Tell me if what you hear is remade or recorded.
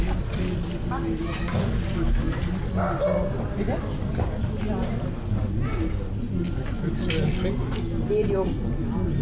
recorded